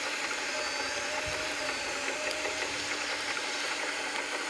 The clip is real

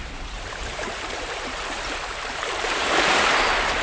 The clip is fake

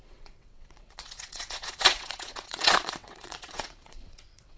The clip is fake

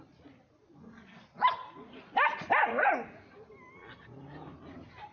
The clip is real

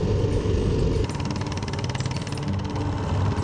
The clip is real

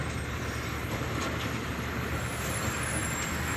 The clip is real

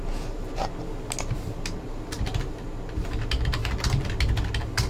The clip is real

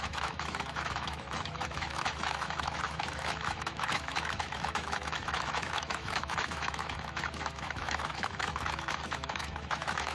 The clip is fake